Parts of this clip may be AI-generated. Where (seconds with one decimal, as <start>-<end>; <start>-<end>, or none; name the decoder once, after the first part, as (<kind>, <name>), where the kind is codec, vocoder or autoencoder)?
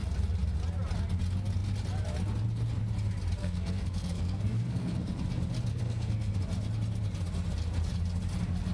3.4-5.1 (codec, SNAC); 5.7-6.4